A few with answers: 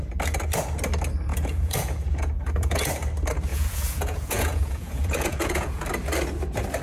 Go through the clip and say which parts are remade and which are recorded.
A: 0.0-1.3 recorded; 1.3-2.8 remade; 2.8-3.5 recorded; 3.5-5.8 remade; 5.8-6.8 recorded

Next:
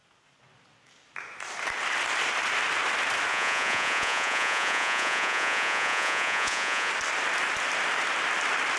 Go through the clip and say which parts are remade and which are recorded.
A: 0.0-3.3 recorded; 3.3-6.9 remade; 6.9-8.8 recorded

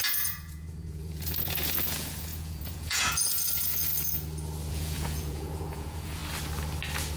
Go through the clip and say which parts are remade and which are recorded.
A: 0.0-3.9 remade; 3.9-4.7 recorded; 4.7-6.2 remade; 6.2-7.2 recorded

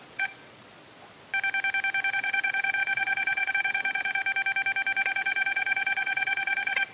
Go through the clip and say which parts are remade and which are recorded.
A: 0.0-0.8 remade; 0.8-2.1 recorded; 2.1-4.2 remade; 4.2-5.0 recorded; 5.0-6.9 remade